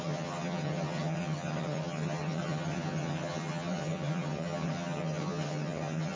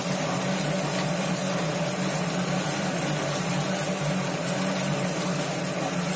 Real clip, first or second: second